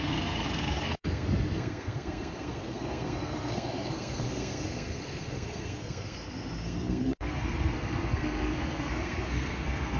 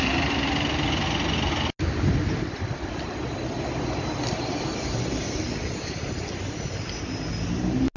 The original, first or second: second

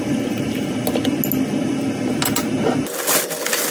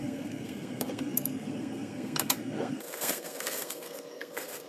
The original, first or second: first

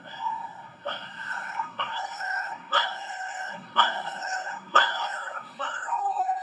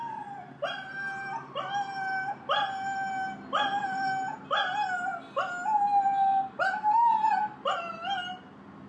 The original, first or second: second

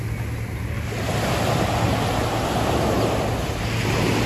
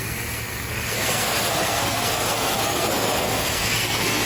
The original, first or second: first